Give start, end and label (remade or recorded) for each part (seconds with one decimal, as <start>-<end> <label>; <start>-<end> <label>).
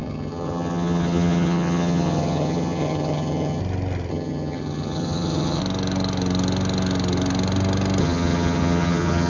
0.0-3.6 remade; 3.6-4.1 recorded; 4.1-5.6 remade; 5.6-8.0 recorded; 8.0-9.3 remade